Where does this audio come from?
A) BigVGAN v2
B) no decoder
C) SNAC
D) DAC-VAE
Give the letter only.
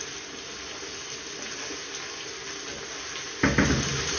B